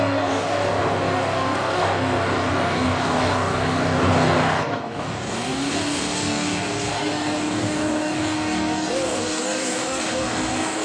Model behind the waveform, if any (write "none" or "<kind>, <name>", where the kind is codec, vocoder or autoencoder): codec, DAC